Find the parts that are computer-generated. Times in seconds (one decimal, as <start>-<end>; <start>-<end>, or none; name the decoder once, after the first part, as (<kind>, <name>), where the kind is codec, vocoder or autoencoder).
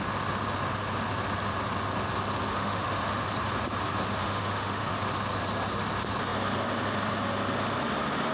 2.5-3.2 (autoencoder, DAC-VAE); 4.2-4.9